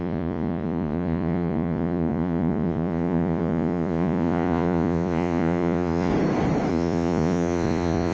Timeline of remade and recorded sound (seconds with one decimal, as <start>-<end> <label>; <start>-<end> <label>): 0.0-6.1 remade; 6.1-6.7 recorded; 6.7-8.1 remade

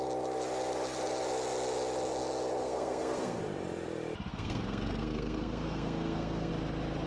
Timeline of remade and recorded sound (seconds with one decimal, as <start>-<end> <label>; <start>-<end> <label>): 0.0-2.6 recorded; 2.6-3.4 remade; 3.4-4.3 recorded; 4.3-6.5 remade; 6.5-7.1 recorded

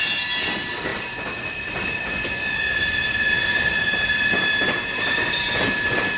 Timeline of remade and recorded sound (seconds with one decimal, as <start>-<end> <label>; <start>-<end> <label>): 0.0-6.2 recorded

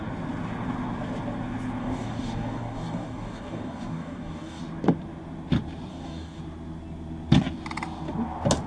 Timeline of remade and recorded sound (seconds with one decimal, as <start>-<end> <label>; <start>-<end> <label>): 0.0-1.8 recorded; 1.8-4.6 remade; 4.6-5.9 recorded; 5.9-6.4 remade; 6.4-8.7 recorded

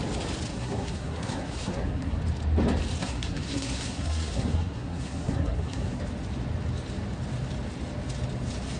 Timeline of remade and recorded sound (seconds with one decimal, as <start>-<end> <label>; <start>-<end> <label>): 0.0-0.5 recorded; 0.5-2.2 remade; 2.2-3.0 recorded; 3.0-6.0 remade; 6.0-8.8 recorded